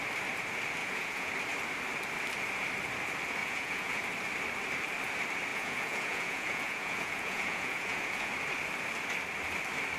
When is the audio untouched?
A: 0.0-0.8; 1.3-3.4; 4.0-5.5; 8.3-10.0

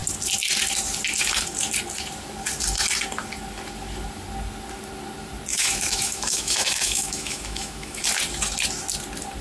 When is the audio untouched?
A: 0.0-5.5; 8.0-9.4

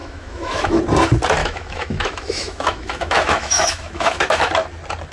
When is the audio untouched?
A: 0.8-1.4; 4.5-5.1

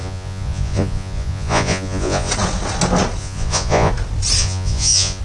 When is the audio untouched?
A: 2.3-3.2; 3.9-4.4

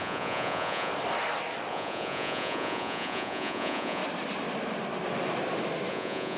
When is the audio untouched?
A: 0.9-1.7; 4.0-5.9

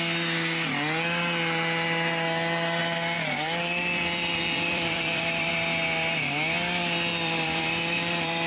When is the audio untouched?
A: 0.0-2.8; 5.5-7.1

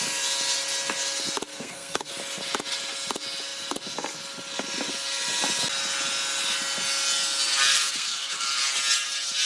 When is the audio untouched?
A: 0.0-1.5; 2.1-7.7; 8.6-9.5

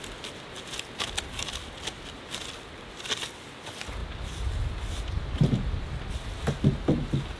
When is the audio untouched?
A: 0.0-7.4